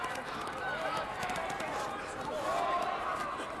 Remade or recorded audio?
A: recorded